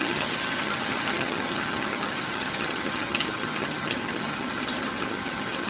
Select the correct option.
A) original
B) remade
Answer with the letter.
B